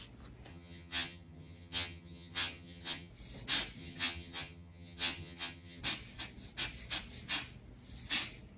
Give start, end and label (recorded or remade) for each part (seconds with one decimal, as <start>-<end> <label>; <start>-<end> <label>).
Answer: 0.0-0.5 recorded; 0.5-3.1 remade; 3.1-3.8 recorded; 3.8-5.8 remade; 5.8-8.6 recorded